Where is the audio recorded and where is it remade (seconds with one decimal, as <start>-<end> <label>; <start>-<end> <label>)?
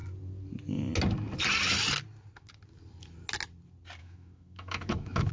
0.0-4.0 recorded; 4.0-5.3 remade